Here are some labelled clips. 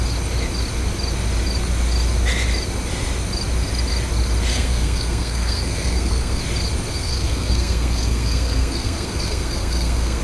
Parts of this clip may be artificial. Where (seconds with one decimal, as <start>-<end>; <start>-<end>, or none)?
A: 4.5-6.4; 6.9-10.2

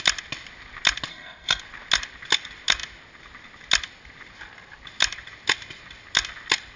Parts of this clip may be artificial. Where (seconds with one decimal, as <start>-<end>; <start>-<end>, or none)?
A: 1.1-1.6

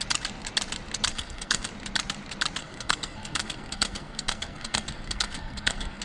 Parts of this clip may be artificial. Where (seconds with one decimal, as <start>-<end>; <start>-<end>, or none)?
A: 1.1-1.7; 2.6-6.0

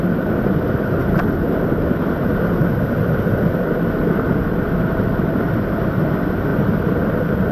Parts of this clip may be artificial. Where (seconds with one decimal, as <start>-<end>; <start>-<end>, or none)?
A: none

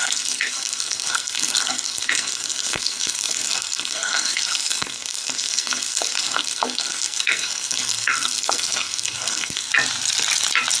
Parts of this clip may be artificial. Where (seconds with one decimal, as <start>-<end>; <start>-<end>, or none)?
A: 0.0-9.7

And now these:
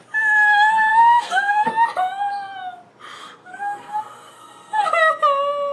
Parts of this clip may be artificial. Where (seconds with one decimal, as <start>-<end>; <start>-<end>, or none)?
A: 0.9-1.7; 3.2-4.9